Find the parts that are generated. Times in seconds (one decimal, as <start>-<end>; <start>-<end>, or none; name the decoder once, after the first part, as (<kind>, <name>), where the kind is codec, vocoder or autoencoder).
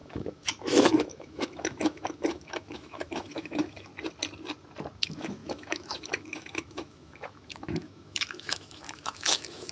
0.0-3.9 (autoencoder, DAC-VAE); 5.0-9.7